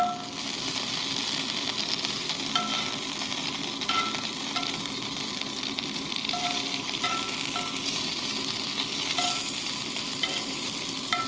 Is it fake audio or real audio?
real